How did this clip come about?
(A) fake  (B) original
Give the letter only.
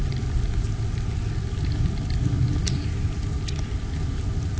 B